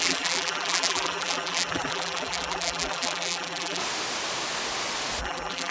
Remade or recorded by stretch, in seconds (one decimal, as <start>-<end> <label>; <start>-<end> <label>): 0.0-3.8 remade; 3.8-5.2 recorded; 5.2-5.7 remade